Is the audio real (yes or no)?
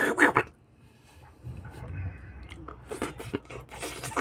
yes